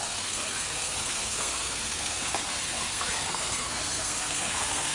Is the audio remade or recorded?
remade